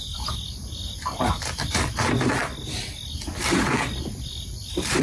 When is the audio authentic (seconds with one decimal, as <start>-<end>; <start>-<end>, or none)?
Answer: none